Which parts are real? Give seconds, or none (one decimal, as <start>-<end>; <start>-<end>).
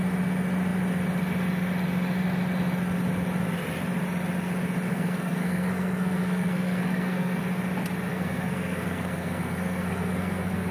0.0-4.9; 7.4-8.1